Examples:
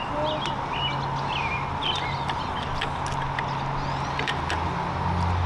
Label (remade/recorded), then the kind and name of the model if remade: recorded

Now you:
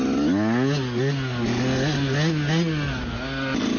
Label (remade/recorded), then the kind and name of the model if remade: recorded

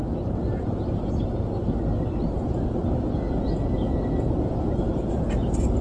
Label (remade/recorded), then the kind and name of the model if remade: recorded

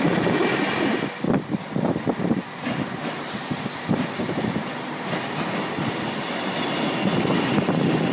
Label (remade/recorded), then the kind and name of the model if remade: recorded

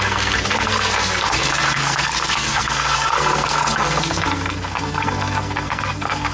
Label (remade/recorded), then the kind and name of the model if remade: remade, codec, SNAC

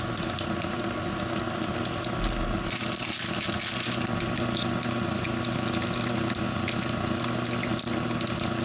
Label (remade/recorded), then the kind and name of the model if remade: recorded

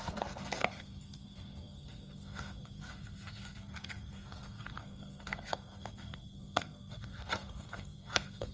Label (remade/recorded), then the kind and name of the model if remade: remade, codec, SNAC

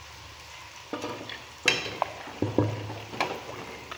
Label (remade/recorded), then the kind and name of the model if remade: recorded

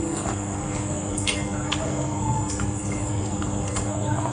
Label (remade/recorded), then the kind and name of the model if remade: remade, codec, SNAC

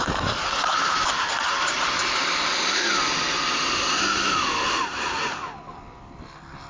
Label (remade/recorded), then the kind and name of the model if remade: recorded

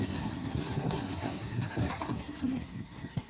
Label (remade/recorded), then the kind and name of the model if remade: remade, codec, SNAC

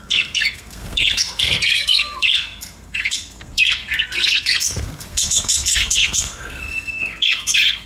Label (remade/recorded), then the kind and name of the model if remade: remade, codec, SNAC